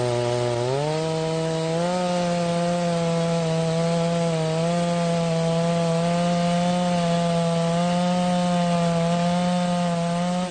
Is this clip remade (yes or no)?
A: no